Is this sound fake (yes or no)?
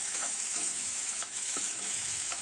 yes